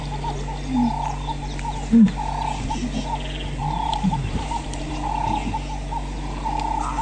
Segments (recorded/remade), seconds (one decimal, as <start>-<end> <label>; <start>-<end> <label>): 0.0-3.6 recorded; 3.6-4.9 remade; 4.9-7.0 recorded

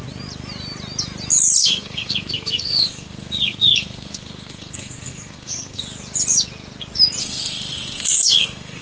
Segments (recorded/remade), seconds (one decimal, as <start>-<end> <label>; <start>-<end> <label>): 0.0-1.6 recorded; 1.6-5.8 remade; 5.8-7.2 recorded; 7.2-8.8 remade

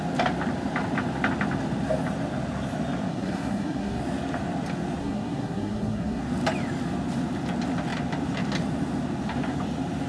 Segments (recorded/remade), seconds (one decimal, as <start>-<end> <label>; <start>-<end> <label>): 0.0-3.1 recorded; 3.1-4.0 remade; 4.0-5.0 recorded; 5.0-6.2 remade; 6.2-10.1 recorded

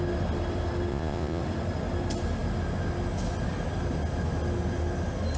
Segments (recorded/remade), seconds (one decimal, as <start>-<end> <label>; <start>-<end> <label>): 0.0-0.9 recorded; 0.9-1.4 remade; 1.4-5.4 recorded

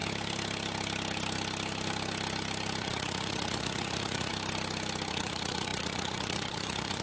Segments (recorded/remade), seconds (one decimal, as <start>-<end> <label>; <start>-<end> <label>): 0.0-2.8 recorded; 2.8-4.3 remade; 4.3-5.1 recorded; 5.1-7.0 remade

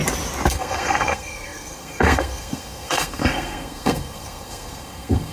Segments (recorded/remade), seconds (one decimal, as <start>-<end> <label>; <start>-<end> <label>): 0.0-0.5 recorded; 0.5-5.3 remade

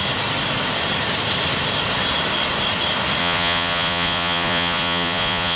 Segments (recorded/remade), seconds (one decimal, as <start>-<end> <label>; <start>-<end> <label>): 0.0-3.2 recorded; 3.2-5.6 remade

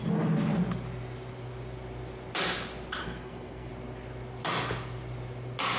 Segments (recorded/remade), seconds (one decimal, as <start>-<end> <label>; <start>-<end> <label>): 0.0-3.0 recorded; 3.0-3.7 remade; 3.7-5.8 recorded